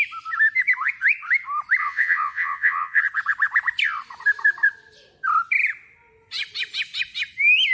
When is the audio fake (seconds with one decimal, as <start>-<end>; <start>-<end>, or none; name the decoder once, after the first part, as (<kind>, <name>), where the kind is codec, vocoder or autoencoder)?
1.8-3.0 (vocoder, WaveNeXt)